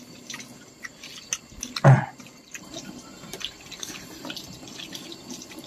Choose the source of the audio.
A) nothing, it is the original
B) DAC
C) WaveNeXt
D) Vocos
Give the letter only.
A